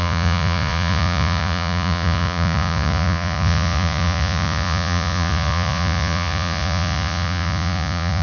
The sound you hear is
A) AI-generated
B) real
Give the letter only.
A